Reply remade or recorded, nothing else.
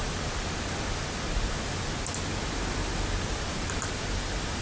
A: recorded